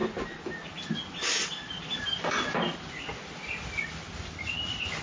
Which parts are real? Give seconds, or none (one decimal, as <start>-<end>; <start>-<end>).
0.0-5.0